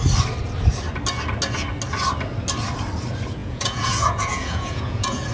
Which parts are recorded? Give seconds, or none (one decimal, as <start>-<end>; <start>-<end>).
0.0-3.4